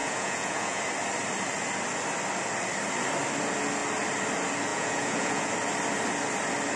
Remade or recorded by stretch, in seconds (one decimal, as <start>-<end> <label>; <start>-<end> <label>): 0.0-0.8 remade; 0.8-4.7 recorded; 4.7-5.5 remade; 5.5-6.8 recorded